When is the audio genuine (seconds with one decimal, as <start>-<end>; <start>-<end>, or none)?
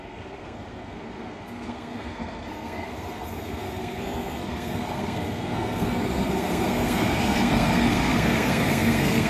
none